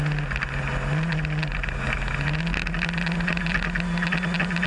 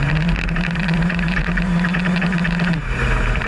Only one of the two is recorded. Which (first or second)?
first